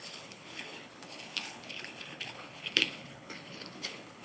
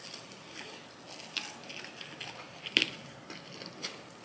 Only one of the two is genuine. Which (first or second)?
second